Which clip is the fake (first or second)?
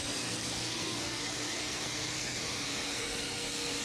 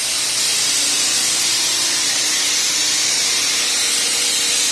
first